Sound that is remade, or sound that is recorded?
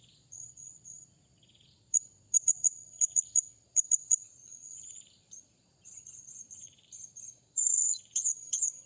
remade